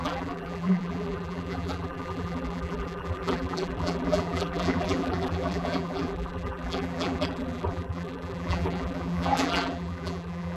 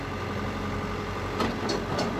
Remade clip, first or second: first